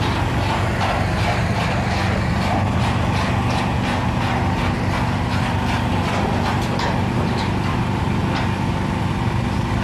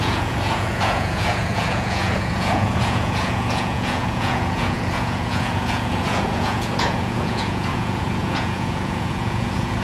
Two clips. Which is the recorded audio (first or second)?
first